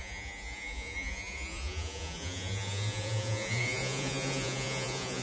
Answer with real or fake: fake